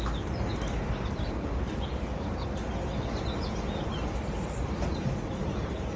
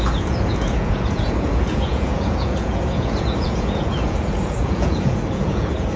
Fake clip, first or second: second